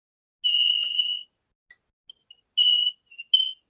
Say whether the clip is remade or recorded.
recorded